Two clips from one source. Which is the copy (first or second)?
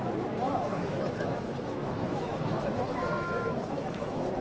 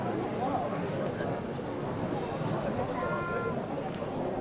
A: first